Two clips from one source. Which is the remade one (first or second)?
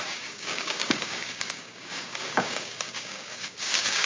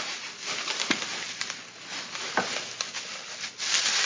first